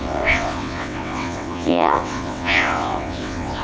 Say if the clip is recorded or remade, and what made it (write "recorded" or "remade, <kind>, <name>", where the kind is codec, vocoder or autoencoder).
remade, vocoder, WaveNeXt